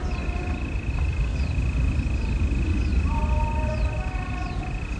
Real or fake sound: real